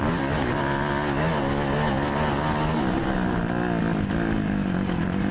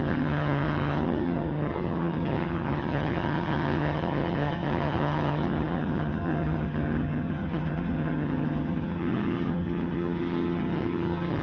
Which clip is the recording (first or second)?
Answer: first